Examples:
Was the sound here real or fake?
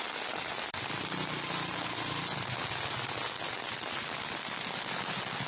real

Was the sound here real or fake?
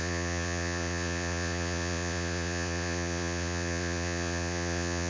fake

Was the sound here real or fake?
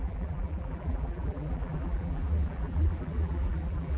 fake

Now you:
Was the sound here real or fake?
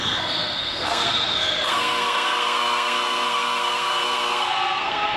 fake